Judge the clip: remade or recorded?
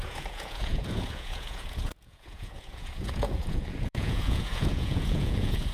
remade